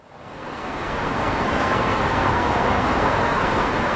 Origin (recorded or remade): remade